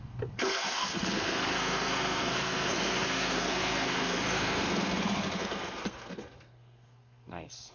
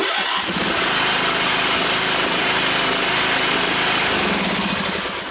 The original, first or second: second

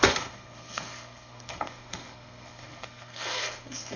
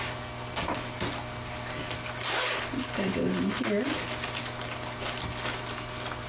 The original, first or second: second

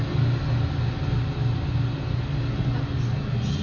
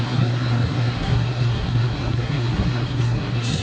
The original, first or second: first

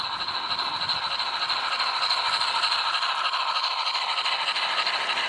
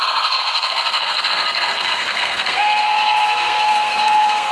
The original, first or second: first